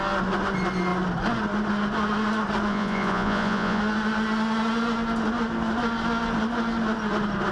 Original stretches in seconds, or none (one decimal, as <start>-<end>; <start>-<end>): 0.0-2.7; 3.8-7.5